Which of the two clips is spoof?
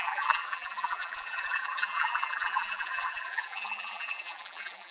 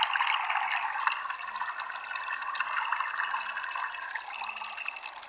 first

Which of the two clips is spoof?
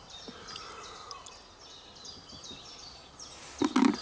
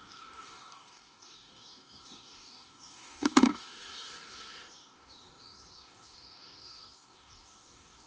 second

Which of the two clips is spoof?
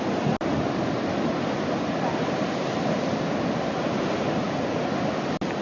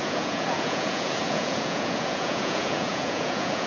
second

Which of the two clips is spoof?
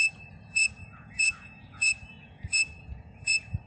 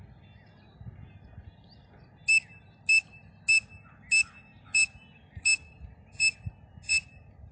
first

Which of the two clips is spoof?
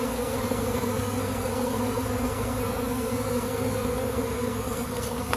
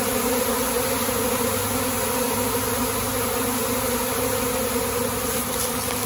first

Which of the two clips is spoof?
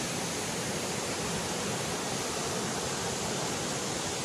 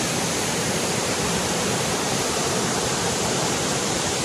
second